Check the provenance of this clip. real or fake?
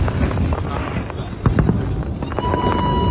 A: real